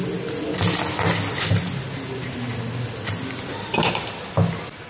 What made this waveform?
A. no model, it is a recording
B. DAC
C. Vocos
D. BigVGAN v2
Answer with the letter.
A